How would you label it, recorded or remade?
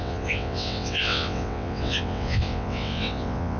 remade